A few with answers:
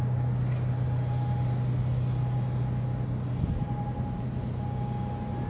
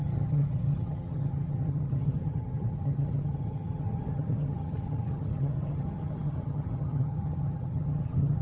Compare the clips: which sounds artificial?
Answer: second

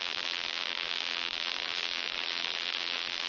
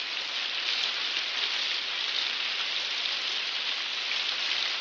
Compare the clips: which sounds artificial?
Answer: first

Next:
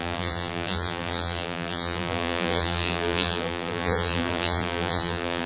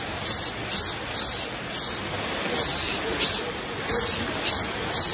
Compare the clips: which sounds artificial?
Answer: first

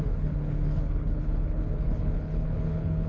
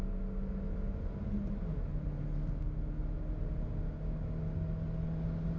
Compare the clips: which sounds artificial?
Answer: first